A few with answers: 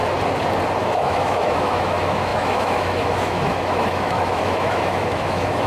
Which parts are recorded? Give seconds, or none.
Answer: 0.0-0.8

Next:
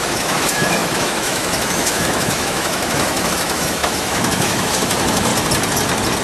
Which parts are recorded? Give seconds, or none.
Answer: 5.3-6.2

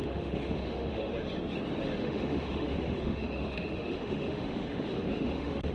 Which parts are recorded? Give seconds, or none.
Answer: 1.1-2.0

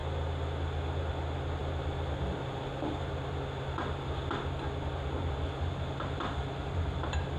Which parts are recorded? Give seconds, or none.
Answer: 0.0-7.4

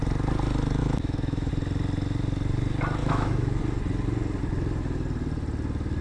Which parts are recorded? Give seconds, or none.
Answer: 0.0-0.8; 1.5-3.0; 3.6-6.0

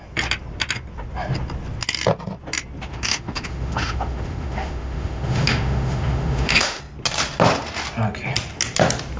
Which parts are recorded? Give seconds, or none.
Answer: 0.0-2.9; 6.8-9.2

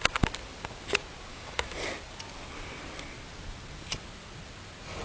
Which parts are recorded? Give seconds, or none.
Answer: 0.0-1.3; 1.8-5.0